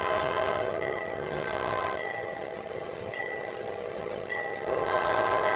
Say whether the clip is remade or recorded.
remade